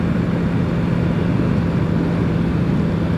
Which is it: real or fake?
real